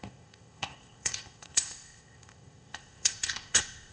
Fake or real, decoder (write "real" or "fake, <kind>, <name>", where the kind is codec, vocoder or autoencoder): fake, codec, ZipCodec